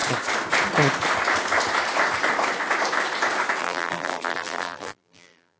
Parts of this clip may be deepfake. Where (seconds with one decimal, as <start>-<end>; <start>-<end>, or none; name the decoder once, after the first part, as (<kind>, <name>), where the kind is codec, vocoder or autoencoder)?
3.6-5.6 (vocoder, BigVGAN v2)